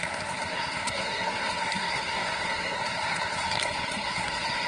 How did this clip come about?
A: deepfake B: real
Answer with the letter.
A